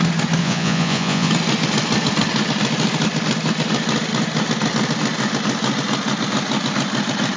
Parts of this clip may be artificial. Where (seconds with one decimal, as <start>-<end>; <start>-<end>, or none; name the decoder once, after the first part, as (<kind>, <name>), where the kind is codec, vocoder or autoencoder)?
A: 0.4-1.3 (vocoder, Vocos)